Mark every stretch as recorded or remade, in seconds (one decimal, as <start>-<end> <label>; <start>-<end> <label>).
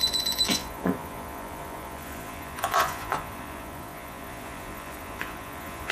0.0-5.9 remade